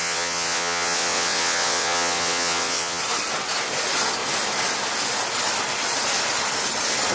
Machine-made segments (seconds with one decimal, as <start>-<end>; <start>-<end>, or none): 0.0-3.0